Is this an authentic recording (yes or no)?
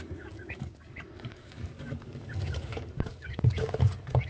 no